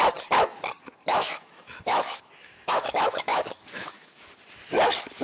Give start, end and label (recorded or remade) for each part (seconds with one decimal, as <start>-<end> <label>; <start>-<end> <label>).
0.0-1.1 recorded; 1.1-4.2 remade; 4.2-5.2 recorded